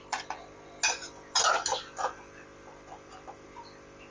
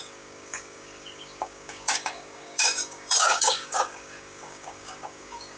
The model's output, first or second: second